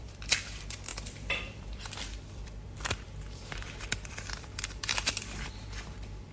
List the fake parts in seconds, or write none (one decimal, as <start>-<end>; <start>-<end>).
0.0-6.3